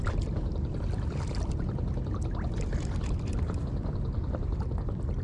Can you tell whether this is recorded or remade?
recorded